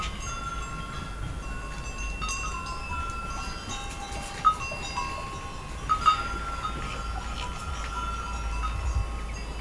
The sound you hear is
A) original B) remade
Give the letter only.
A